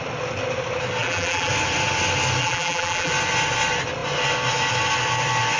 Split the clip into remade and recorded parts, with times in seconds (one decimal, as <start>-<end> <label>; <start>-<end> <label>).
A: 0.0-1.0 recorded; 1.0-1.5 remade; 1.5-2.4 recorded; 2.4-3.1 remade; 3.1-5.6 recorded